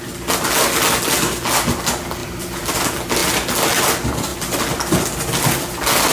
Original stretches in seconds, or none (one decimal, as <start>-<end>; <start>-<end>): 0.0-2.2; 2.7-6.1